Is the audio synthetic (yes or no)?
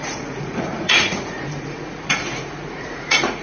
yes